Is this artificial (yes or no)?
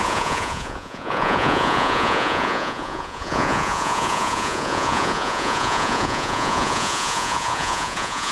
yes